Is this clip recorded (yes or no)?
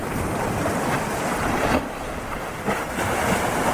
yes